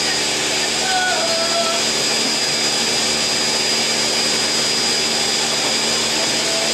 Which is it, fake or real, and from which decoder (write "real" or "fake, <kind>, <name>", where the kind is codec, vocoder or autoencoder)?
real